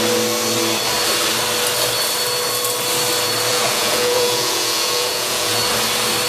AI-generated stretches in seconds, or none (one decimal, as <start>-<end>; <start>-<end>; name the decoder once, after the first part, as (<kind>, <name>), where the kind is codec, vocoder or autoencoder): 3.5-5.6 (vocoder, Vocos)